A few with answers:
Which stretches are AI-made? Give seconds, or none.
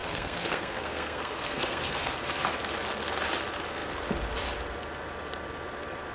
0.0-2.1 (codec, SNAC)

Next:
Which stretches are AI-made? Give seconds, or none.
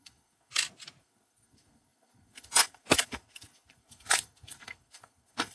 0.0-0.5 (codec, SNAC); 1.0-5.5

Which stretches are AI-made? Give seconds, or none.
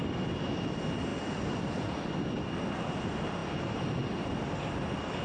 none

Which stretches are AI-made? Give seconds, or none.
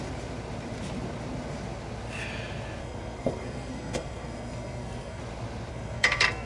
2.8-5.2 (codec, SNAC); 5.7-6.5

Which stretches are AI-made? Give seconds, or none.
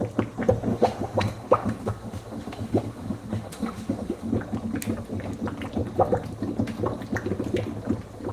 0.7-4.3 (autoencoder, DAC-VAE)